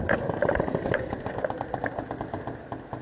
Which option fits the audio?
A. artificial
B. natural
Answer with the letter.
B